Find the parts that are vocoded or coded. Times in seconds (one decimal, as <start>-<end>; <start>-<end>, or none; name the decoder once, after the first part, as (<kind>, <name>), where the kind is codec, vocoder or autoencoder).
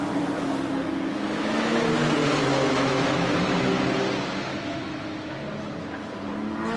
1.1-1.7 (autoencoder, DAC-VAE); 2.4-3.6; 4.5-5.4